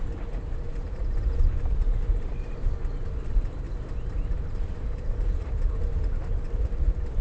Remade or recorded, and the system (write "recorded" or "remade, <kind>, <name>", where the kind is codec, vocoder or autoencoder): remade, vocoder, BigVGAN v2